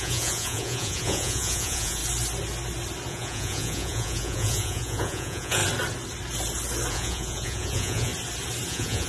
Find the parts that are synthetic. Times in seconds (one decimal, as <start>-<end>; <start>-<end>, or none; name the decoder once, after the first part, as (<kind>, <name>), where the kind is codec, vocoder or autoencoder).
0.0-2.0 (vocoder, Vocos); 3.1-5.6; 6.9-8.1; 8.7-9.1